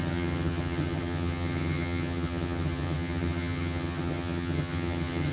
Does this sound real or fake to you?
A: fake